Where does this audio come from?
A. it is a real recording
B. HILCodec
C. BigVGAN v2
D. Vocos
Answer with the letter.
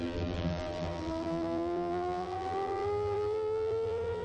C